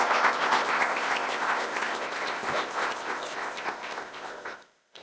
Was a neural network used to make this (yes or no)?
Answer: yes